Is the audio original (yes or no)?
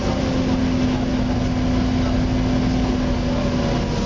yes